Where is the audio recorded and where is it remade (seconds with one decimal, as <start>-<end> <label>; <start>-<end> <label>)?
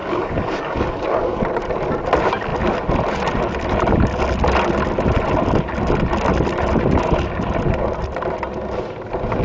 0.0-1.4 remade; 1.4-9.4 recorded